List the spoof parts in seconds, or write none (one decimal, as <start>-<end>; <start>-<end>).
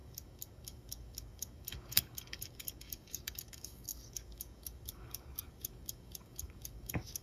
0.0-7.2